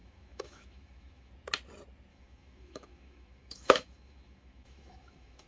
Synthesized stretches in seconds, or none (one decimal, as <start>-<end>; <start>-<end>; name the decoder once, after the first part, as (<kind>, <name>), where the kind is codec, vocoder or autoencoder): 0.0-1.3 (autoencoder, DAC-VAE); 2.1-5.5